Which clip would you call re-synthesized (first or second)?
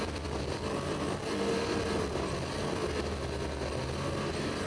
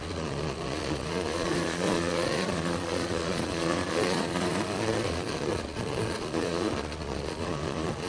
second